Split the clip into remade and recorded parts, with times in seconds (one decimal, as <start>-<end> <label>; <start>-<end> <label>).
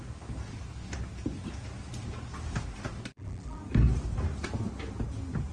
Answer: 0.0-3.1 recorded; 3.1-3.6 remade; 3.6-5.5 recorded